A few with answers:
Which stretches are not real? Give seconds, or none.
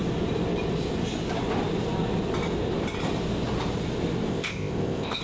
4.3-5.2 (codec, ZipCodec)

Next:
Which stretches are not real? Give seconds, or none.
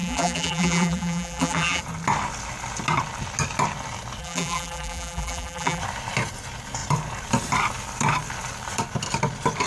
0.0-1.8 (vocoder, BigVGAN v2); 4.2-5.8